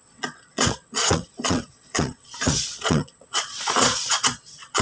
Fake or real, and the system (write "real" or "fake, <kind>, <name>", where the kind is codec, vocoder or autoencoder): fake, vocoder, Vocos